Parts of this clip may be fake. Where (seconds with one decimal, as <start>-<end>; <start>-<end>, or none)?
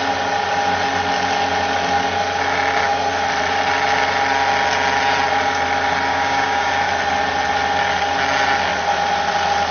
6.1-6.7